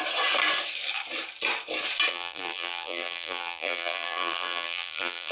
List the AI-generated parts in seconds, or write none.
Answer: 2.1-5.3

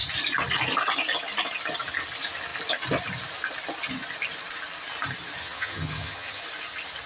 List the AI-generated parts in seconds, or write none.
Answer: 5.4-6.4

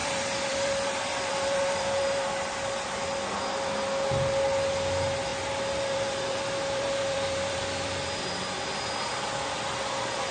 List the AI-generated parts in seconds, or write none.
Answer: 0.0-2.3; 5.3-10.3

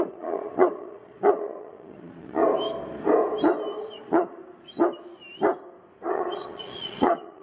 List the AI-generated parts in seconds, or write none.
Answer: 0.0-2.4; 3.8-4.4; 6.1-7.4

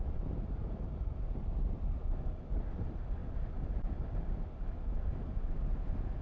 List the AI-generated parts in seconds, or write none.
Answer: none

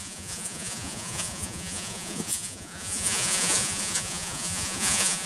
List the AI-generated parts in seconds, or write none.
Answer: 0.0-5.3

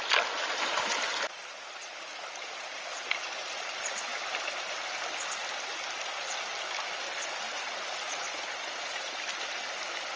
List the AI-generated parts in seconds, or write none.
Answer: none

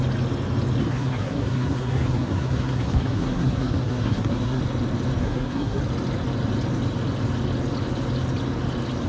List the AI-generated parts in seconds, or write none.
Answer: 0.8-4.6; 5.2-5.8